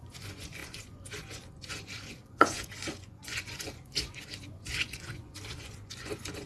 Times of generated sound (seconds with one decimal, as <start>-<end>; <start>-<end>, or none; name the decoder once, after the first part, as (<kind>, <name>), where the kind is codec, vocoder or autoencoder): 0.0-6.5 (vocoder, Vocos)

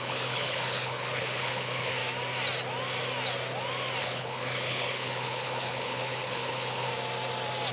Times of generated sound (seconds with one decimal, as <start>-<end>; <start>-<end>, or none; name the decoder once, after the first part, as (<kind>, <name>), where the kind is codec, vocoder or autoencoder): 0.0-2.0 (codec, HILCodec); 4.0-6.9

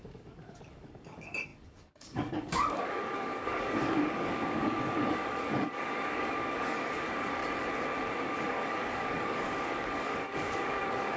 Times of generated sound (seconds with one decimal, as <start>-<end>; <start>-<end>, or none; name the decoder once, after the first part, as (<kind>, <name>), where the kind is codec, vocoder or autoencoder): 0.0-7.4 (codec, DAC); 8.1-11.2

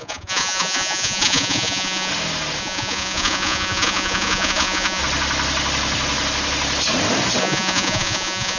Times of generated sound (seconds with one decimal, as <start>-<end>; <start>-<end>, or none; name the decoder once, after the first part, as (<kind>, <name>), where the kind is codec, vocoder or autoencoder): 0.0-2.1 (vocoder, Vocos); 2.6-5.0; 7.4-8.6

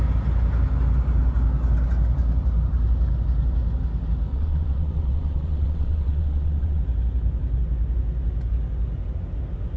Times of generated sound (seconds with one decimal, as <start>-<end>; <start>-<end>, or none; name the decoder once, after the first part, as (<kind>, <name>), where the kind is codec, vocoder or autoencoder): 4.3-6.8 (vocoder, WaveNeXt)